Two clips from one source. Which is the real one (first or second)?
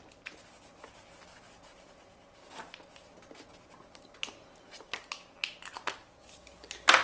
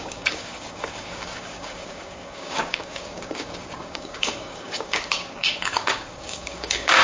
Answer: first